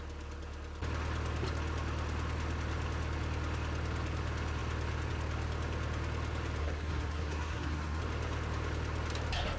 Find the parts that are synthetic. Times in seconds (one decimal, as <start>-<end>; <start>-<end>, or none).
6.6-8.0